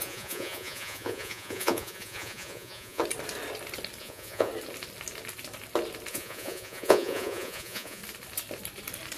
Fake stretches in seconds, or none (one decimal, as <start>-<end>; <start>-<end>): 0.0-3.0; 4.0-4.5; 6.1-8.0